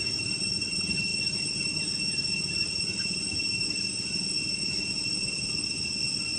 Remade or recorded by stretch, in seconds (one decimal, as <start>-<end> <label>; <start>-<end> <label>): 0.0-6.4 recorded